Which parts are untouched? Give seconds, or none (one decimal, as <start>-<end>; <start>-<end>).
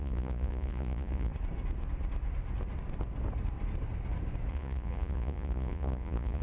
1.3-4.5